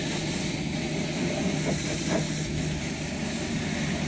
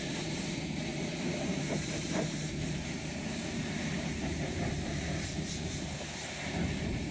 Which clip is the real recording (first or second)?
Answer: first